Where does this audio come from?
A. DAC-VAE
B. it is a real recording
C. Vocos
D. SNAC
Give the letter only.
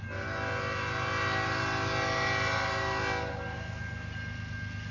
B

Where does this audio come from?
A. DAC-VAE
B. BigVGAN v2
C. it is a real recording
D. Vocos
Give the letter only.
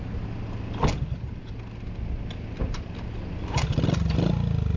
C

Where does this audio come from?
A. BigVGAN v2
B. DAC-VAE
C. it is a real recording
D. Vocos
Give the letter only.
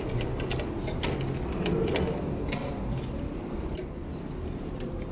C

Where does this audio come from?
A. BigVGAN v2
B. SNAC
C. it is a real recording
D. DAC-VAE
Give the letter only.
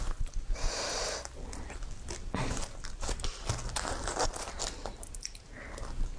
C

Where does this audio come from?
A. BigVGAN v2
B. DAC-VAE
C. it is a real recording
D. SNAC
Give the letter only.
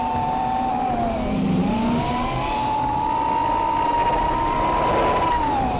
C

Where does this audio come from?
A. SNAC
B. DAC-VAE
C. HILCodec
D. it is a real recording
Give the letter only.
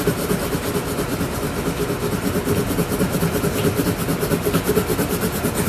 D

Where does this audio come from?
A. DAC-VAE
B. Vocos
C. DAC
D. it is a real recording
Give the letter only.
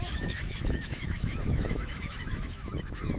A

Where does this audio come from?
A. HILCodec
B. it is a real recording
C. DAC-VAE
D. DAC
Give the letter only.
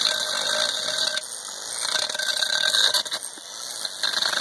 B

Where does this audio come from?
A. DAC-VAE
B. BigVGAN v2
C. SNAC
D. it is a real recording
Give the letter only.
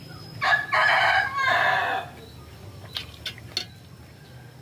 D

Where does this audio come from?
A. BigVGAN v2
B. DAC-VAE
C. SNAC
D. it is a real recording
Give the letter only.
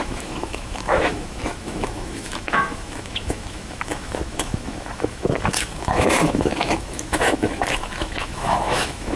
B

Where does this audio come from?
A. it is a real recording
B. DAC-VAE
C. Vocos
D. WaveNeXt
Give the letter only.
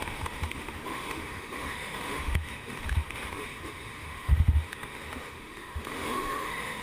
B